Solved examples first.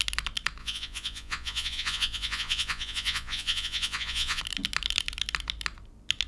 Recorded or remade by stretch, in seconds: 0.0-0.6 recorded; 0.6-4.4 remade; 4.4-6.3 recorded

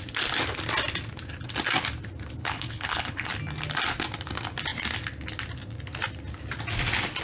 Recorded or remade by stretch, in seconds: 0.0-2.4 recorded; 2.4-3.3 remade; 3.3-7.2 recorded

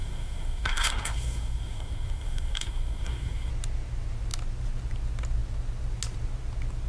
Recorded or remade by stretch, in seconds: 0.0-3.5 remade; 3.5-6.9 recorded

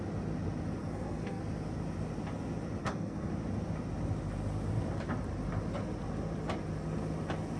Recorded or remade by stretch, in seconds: 0.0-0.8 recorded; 0.8-1.4 remade; 1.4-2.8 recorded; 2.8-3.3 remade; 3.3-7.6 recorded

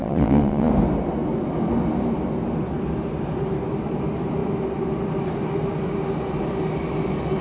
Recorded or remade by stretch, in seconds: 0.0-0.7 remade; 0.7-7.4 recorded

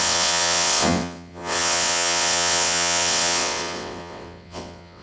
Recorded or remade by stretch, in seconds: 0.0-5.0 remade

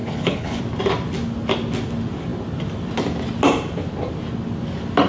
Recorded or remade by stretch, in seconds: 0.0-0.6 remade; 0.6-5.1 recorded

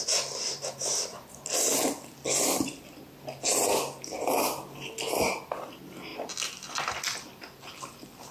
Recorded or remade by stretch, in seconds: 0.0-8.3 recorded